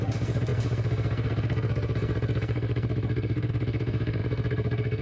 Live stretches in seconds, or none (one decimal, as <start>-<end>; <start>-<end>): none